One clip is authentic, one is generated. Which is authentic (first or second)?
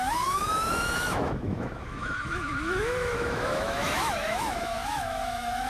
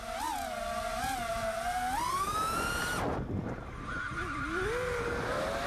second